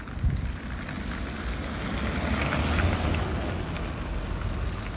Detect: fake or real real